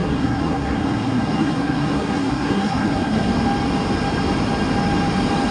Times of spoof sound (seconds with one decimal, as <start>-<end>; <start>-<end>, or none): 0.0-3.3